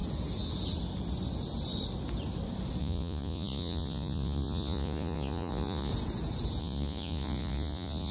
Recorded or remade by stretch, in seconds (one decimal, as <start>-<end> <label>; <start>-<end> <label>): 0.0-2.8 recorded; 2.8-5.9 remade; 5.9-6.6 recorded; 6.6-8.1 remade